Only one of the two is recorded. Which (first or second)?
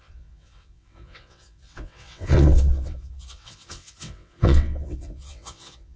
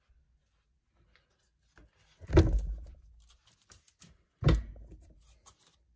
second